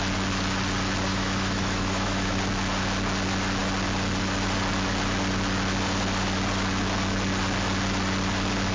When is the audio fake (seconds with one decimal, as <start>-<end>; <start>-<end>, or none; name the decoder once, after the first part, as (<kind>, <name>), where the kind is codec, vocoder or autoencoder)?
1.1-2.4 (autoencoder, DAC-VAE)